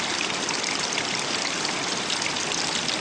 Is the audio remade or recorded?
recorded